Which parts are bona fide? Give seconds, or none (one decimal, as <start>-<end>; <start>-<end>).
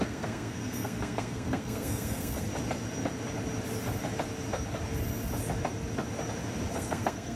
2.5-6.7